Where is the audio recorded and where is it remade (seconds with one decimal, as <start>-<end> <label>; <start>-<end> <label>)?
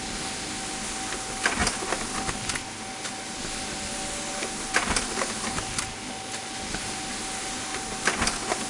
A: 0.0-8.7 recorded